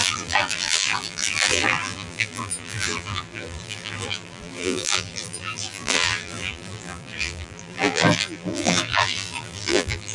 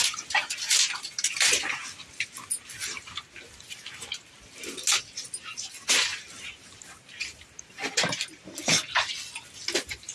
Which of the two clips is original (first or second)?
second